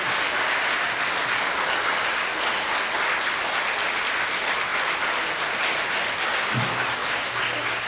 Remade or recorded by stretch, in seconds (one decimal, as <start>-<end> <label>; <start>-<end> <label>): 0.0-7.9 recorded